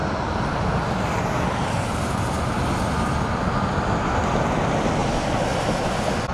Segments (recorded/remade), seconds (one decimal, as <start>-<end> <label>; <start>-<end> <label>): 0.0-6.3 recorded